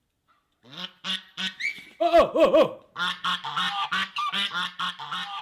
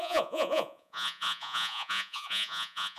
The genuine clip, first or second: first